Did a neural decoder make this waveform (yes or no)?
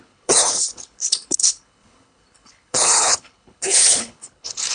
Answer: yes